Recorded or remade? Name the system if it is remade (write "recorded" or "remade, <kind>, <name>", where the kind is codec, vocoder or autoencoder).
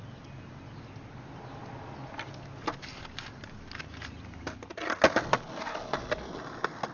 recorded